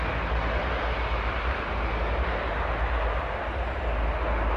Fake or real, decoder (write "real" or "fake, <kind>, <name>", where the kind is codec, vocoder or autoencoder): real